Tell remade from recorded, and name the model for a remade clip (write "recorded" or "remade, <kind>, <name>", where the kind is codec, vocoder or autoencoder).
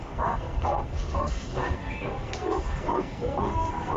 remade, codec, SNAC